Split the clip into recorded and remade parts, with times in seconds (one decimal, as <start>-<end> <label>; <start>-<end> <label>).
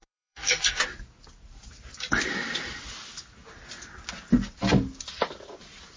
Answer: 0.0-0.8 remade; 0.8-6.0 recorded